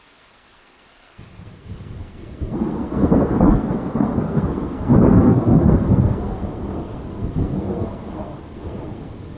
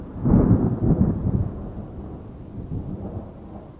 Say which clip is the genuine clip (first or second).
second